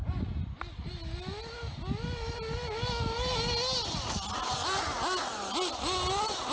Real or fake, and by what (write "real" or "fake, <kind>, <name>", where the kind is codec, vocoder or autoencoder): real